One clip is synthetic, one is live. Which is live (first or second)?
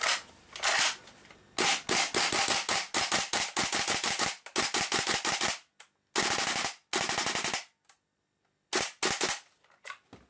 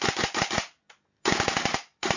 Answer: first